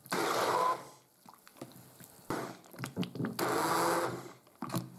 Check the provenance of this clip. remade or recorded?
recorded